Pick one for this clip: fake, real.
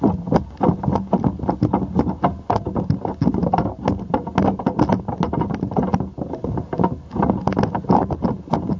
real